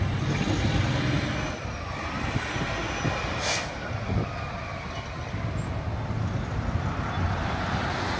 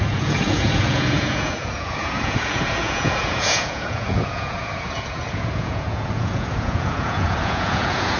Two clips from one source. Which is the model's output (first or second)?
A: second